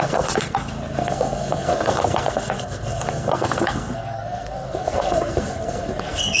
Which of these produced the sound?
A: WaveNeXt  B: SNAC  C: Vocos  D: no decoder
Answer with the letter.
B